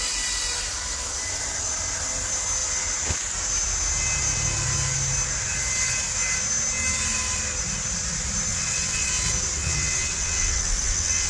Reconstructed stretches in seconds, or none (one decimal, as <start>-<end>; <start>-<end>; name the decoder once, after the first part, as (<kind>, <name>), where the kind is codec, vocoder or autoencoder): 8.5-9.1 (vocoder, WaveNeXt); 9.6-11.3